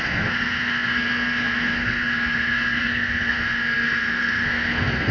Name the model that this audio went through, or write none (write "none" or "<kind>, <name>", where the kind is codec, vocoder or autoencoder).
codec, SNAC